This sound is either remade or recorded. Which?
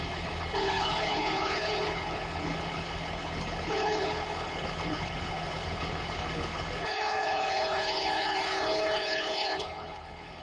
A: remade